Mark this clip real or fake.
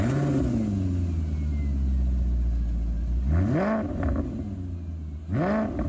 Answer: real